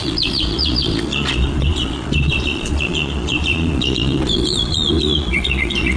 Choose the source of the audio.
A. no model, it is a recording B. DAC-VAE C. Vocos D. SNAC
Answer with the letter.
C